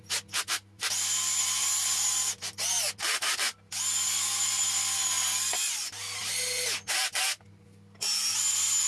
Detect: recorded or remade recorded